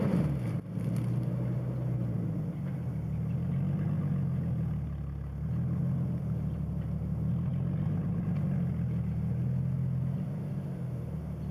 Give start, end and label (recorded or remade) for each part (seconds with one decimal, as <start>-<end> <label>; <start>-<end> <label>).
0.0-7.5 recorded; 7.5-8.2 remade; 8.2-11.5 recorded